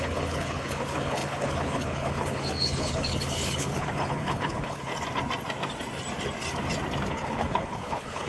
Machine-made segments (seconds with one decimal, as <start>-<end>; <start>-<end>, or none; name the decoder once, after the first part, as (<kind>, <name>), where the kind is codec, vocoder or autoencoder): 0.0-4.9 (codec, HILCodec); 7.1-8.3